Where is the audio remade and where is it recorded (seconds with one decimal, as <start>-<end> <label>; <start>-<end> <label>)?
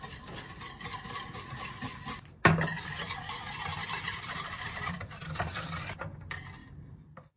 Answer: 0.0-3.8 recorded; 3.8-5.3 remade; 5.3-6.6 recorded; 6.6-7.4 remade